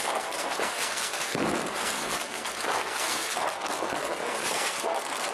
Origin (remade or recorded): remade